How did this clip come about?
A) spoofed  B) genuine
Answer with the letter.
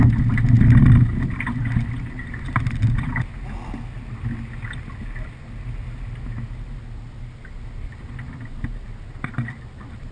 B